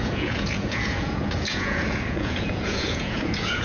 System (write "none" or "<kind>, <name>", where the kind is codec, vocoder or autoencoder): vocoder, Vocos